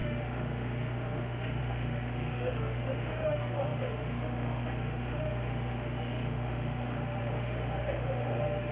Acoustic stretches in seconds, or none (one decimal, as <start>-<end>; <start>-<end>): none